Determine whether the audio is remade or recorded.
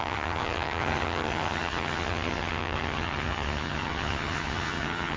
remade